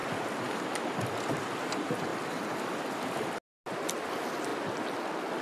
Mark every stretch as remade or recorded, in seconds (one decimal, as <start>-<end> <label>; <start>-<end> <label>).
0.0-0.5 remade; 0.5-5.4 recorded